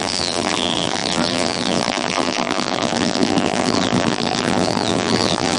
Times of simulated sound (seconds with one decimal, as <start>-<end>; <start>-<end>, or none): 0.0-5.6